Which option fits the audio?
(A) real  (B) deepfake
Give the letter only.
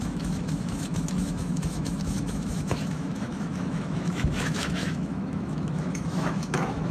B